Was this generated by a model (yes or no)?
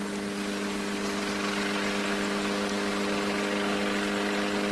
no